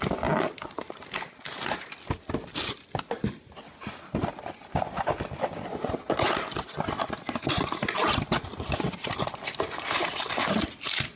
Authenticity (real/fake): real